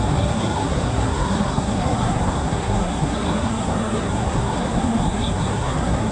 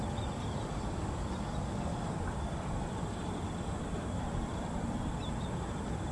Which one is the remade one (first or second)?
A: first